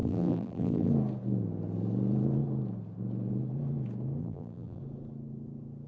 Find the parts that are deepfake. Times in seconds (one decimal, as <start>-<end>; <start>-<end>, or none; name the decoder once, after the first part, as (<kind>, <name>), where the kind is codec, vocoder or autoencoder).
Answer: 0.0-0.9 (vocoder, BigVGAN v2); 4.2-4.8

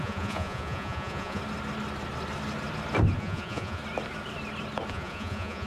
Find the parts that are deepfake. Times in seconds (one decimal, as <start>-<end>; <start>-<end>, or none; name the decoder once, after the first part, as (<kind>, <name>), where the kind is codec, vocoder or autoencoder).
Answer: 0.0-1.4 (vocoder, Vocos); 3.2-3.8; 4.9-5.7